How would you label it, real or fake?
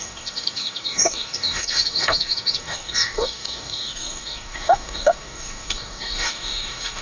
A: fake